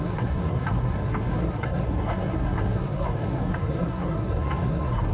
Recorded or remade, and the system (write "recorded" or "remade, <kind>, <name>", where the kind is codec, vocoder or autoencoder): remade, codec, SNAC